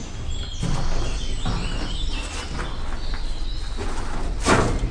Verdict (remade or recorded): recorded